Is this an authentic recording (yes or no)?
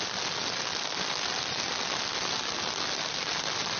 yes